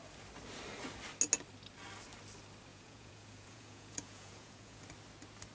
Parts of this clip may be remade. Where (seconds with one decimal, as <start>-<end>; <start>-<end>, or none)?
2.7-4.8